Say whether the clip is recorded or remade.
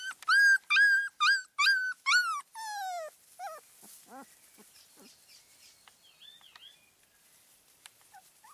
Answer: recorded